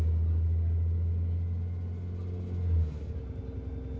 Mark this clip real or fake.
real